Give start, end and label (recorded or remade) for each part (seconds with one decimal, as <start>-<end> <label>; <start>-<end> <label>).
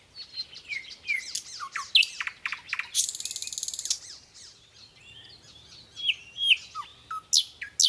0.0-7.9 recorded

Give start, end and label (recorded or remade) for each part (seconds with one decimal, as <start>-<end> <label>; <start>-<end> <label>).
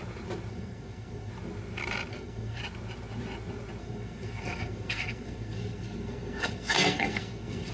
0.0-0.5 recorded; 0.5-1.3 remade; 1.3-2.1 recorded; 2.1-2.6 remade; 2.6-3.8 recorded; 3.8-7.7 remade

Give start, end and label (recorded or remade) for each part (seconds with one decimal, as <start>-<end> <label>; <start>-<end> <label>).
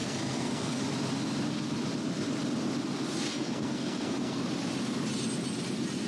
0.0-0.8 remade; 0.8-3.3 recorded; 3.3-4.4 remade; 4.4-6.1 recorded